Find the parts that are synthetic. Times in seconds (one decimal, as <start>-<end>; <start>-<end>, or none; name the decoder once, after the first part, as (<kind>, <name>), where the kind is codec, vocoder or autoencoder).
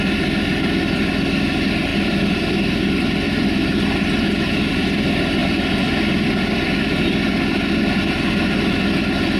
1.9-4.7 (vocoder, BigVGAN v2); 5.4-6.3